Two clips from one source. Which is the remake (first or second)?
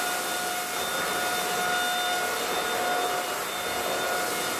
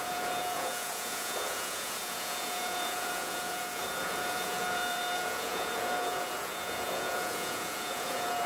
second